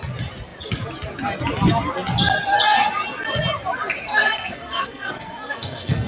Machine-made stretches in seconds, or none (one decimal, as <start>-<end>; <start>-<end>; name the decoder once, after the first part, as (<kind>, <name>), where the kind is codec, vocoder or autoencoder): 4.1-6.1 (codec, SNAC)